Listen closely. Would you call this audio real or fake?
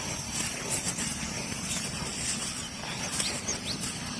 real